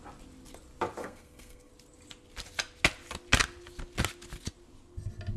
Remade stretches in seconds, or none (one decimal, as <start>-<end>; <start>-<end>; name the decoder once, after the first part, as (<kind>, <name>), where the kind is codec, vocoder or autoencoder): 1.0-1.7 (codec, SNAC)